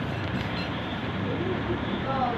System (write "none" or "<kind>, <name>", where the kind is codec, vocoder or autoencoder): vocoder, BigVGAN v2